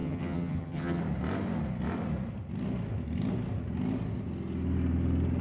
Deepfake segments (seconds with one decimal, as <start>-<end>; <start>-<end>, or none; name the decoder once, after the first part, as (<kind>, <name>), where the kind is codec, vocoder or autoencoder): 0.0-1.0 (vocoder, HiFi-GAN)

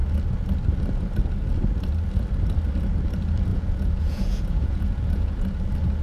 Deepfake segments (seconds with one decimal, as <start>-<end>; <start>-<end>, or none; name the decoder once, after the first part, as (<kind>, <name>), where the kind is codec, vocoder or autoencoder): 3.5-5.4 (vocoder, Vocos)

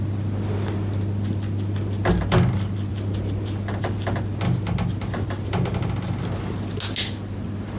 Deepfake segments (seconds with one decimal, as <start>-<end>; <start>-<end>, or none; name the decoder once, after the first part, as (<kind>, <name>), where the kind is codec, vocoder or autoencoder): none

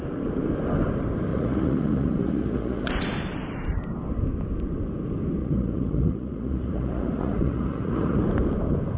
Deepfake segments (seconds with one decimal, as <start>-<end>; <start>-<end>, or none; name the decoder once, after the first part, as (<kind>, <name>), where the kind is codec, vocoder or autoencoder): 1.3-2.9 (vocoder, Vocos); 5.4-8.2

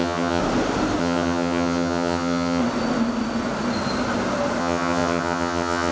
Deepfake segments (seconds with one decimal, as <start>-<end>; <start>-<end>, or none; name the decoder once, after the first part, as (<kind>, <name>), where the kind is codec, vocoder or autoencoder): 0.0-0.4 (vocoder, HiFi-GAN); 1.0-2.6; 4.6-5.9